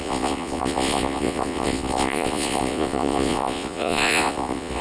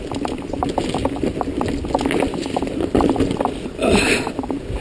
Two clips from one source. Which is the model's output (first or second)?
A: first